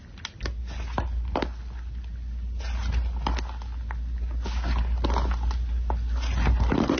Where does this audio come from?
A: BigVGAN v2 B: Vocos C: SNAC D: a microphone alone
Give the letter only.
D